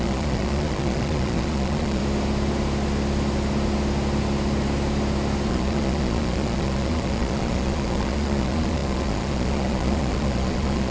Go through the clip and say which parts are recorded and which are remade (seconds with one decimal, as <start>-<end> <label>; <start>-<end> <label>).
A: 0.0-2.0 remade; 2.0-5.5 recorded; 5.5-10.9 remade